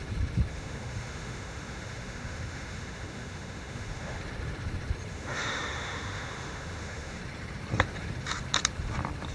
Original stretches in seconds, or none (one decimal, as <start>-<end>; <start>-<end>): 0.0-0.5; 4.2-5.1; 7.2-9.3